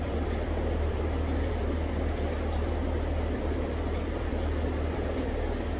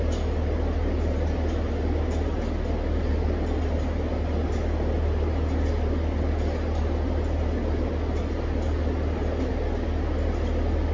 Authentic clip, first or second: second